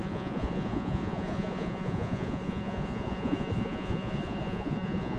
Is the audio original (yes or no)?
no